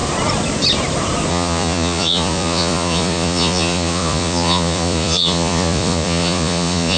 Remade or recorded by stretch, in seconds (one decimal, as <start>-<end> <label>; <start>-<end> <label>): 0.0-1.3 recorded; 1.3-7.0 remade